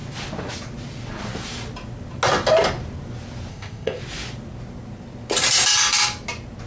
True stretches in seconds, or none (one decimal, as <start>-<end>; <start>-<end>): 0.0-3.5; 4.0-6.7

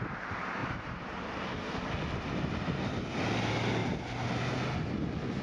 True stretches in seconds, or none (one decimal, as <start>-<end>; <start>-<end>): 0.0-0.6; 1.8-5.4

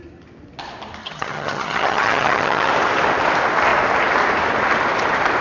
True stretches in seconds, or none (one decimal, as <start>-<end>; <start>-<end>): 0.0-1.0; 2.7-5.4

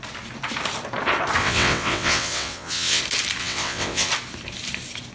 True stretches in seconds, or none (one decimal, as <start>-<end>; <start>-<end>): 0.0-1.4; 3.0-3.4; 4.1-5.1

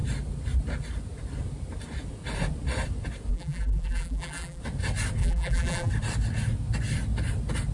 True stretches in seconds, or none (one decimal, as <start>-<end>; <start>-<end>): 0.0-3.3; 4.6-5.2; 5.9-7.7